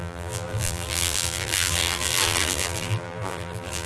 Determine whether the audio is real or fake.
fake